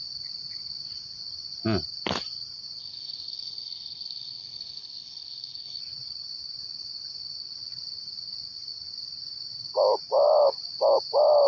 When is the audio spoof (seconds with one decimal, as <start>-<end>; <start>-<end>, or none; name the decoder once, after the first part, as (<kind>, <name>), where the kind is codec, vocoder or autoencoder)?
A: 2.8-5.8 (codec, SNAC)